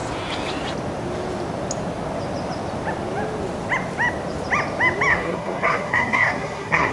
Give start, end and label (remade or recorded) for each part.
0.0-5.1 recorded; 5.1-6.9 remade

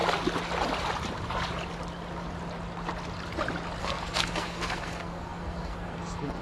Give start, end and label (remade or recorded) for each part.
0.0-3.8 recorded; 3.8-6.4 remade

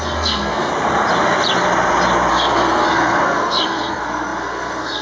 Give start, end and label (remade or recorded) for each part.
0.0-0.7 remade; 0.7-2.3 recorded; 2.3-5.0 remade

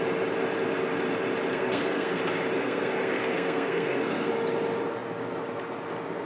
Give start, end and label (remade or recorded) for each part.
0.0-1.5 recorded; 1.5-2.2 remade; 2.2-2.6 recorded; 2.6-4.3 remade; 4.3-6.3 recorded

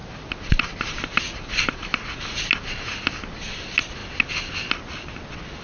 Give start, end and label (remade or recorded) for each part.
0.0-5.6 recorded

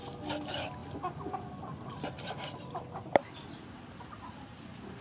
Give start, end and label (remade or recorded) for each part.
0.0-5.0 recorded

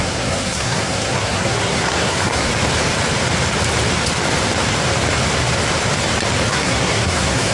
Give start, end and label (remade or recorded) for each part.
0.0-2.5 remade; 2.5-6.5 recorded; 6.5-7.5 remade